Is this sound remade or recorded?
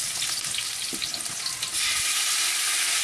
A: recorded